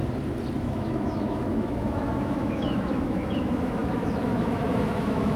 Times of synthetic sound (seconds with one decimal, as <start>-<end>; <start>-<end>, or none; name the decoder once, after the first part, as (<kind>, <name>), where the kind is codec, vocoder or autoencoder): 0.6-5.4 (autoencoder, DAC-VAE)